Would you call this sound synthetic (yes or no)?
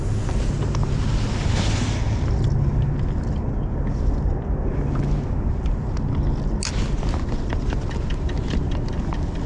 no